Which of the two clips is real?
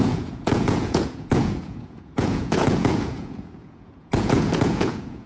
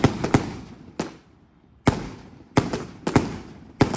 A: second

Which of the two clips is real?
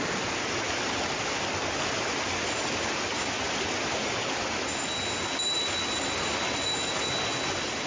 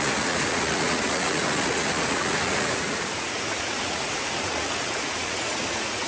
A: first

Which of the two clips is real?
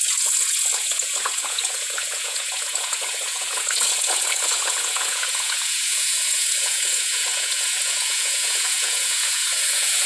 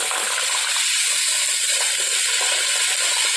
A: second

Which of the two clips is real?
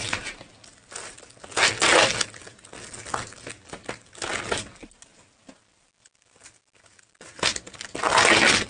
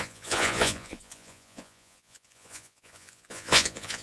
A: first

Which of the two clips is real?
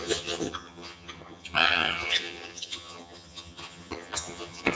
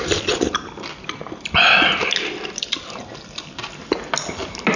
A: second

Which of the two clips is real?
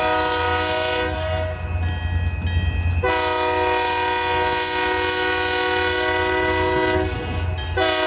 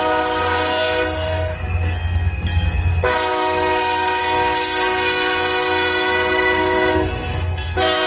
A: first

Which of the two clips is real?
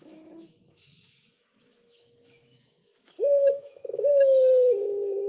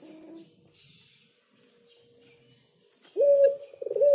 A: second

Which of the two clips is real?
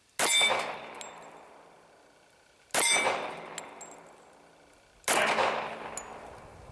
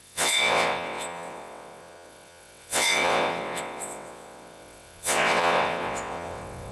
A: first